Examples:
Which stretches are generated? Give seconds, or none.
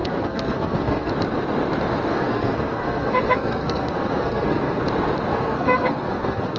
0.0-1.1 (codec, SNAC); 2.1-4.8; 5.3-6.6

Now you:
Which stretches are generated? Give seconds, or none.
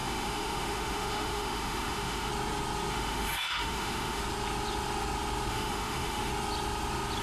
0.0-2.3 (autoencoder, DAC-VAE); 2.9-4.2; 5.5-6.3